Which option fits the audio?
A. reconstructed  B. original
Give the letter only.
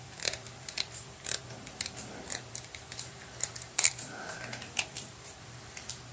A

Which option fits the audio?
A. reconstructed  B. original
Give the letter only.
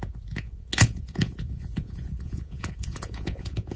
A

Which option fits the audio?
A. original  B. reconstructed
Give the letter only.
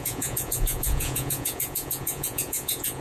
B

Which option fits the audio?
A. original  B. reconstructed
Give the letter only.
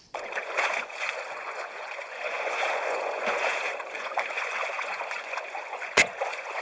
B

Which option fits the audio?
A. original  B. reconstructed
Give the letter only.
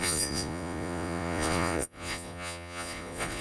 B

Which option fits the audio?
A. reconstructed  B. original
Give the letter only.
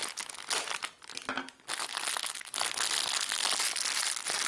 B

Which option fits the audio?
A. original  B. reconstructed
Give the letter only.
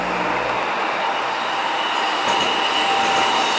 A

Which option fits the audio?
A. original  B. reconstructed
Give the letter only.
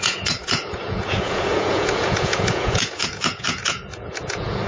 B